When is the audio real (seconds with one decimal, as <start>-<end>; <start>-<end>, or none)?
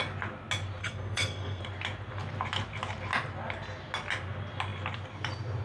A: 0.0-0.8; 1.6-5.6